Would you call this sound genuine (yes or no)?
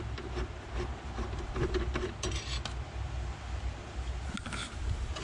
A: yes